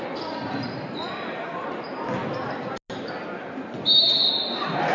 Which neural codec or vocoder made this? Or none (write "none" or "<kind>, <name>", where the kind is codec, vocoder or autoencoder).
none